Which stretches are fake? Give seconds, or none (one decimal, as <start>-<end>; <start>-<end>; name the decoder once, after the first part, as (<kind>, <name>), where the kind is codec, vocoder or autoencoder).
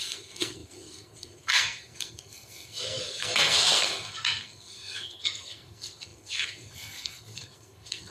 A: 0.0-8.1 (codec, SNAC)